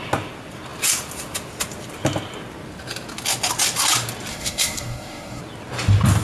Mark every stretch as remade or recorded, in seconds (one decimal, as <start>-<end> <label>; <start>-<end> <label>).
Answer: 0.0-4.3 recorded; 4.3-5.4 remade; 5.4-6.2 recorded